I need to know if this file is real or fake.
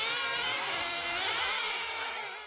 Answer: real